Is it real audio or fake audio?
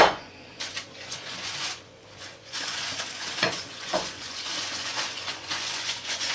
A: fake